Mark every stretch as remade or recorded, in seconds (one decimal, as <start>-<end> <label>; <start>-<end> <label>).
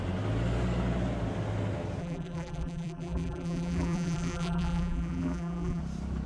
0.0-2.0 recorded; 2.0-5.8 remade; 5.8-6.3 recorded